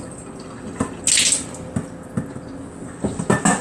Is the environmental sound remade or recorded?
recorded